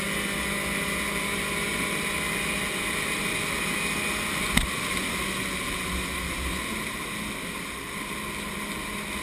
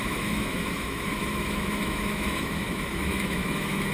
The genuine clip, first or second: first